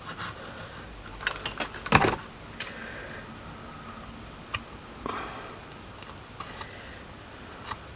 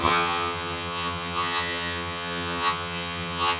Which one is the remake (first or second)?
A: second